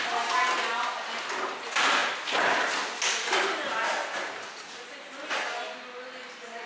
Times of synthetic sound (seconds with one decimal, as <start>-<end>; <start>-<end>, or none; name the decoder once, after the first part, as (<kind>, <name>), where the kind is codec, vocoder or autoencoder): 2.0-2.7 (vocoder, BigVGAN v2)